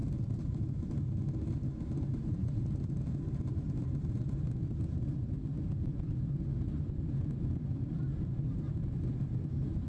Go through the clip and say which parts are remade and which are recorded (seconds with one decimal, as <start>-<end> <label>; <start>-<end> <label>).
0.0-9.9 recorded